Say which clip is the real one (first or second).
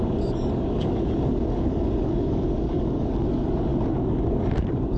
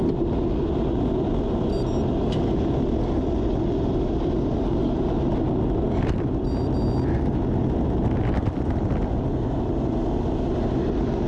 second